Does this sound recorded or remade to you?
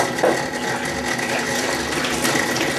recorded